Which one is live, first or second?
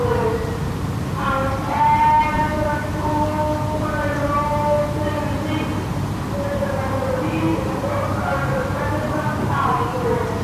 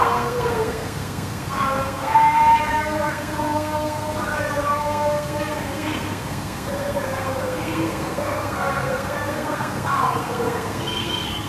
first